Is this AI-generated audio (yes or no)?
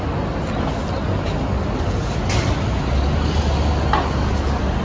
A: no